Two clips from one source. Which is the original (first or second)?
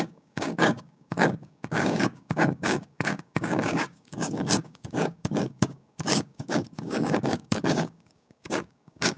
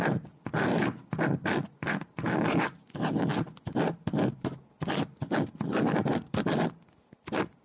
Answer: second